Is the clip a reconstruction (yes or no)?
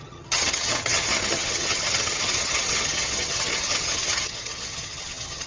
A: yes